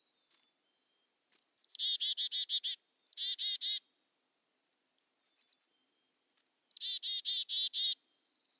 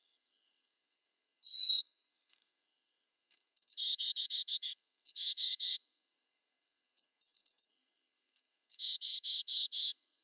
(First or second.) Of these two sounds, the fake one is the second